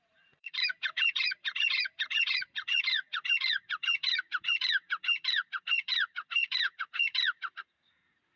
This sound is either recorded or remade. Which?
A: remade